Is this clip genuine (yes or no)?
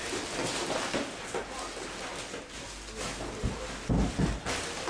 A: yes